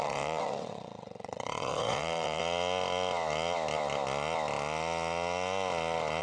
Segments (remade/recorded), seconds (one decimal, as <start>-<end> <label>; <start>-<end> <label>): 0.0-2.4 remade; 2.4-6.2 recorded

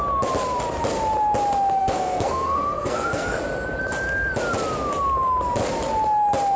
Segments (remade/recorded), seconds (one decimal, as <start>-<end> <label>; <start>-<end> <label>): 0.0-1.8 recorded; 1.8-3.4 remade; 3.4-6.6 recorded